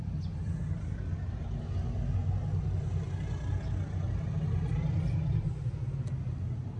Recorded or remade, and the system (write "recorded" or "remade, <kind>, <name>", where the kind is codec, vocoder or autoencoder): recorded